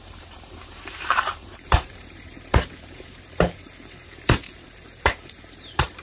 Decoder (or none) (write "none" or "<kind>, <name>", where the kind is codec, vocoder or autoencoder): vocoder, BigVGAN v2